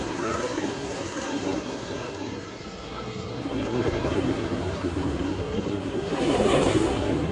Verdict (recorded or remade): remade